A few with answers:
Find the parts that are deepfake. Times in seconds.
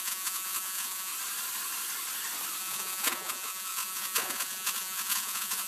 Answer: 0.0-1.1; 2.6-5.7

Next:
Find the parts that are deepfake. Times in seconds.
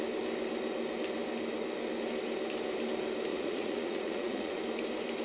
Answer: 3.3-4.6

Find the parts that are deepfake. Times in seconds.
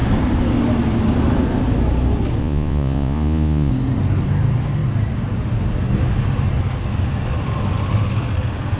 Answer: 2.4-3.7